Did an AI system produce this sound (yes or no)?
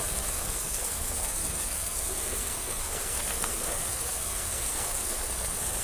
yes